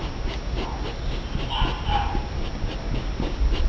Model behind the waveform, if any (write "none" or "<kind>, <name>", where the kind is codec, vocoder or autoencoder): none